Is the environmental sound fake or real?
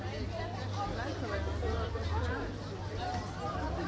real